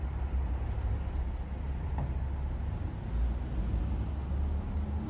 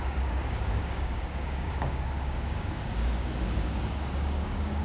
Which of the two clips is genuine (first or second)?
first